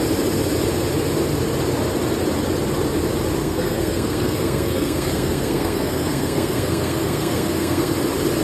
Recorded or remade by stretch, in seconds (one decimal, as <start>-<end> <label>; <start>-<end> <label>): 0.0-3.4 recorded; 3.4-7.9 remade; 7.9-8.4 recorded